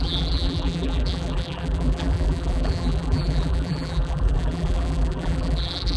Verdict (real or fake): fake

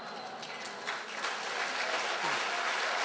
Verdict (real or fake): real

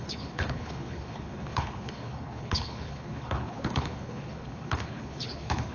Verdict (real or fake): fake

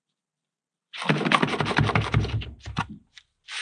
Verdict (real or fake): real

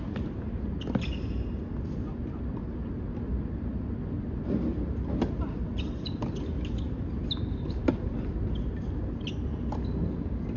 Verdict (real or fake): real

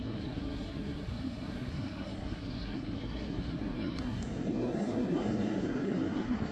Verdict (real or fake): fake